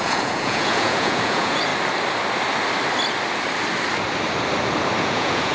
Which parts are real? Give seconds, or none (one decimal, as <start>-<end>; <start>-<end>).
1.7-5.0